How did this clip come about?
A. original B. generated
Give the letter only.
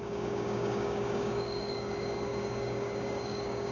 B